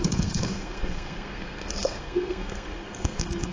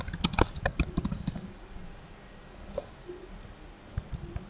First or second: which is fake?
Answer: first